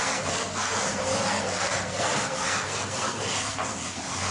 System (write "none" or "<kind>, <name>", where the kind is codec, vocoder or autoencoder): codec, SNAC